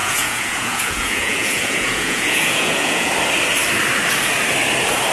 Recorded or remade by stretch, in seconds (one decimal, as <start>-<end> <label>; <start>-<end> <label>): 0.0-3.1 remade; 3.1-5.1 recorded